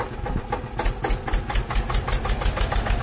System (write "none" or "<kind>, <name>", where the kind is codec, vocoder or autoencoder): none